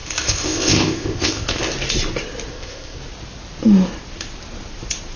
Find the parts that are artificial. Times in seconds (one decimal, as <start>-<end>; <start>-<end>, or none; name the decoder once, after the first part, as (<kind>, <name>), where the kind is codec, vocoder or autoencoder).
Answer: 0.0-1.6 (codec, ZipCodec); 2.5-3.0